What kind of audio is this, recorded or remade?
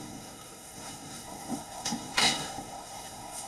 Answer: remade